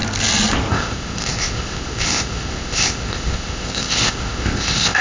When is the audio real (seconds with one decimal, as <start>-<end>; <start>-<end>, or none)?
0.0-0.7